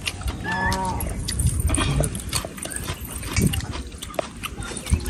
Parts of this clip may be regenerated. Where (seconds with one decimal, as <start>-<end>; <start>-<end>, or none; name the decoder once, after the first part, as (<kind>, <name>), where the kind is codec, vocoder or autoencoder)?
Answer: none